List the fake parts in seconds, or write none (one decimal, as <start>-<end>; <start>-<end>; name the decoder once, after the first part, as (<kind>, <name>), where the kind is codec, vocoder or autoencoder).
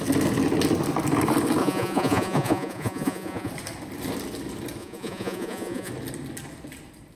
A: 1.6-3.5 (vocoder, Vocos); 4.8-5.9